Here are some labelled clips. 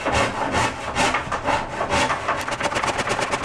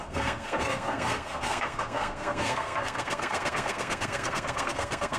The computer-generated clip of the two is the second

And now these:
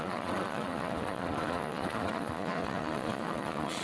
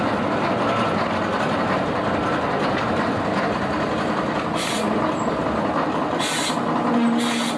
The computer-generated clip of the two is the first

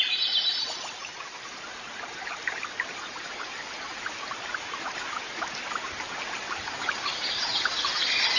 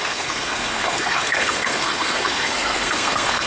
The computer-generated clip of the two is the second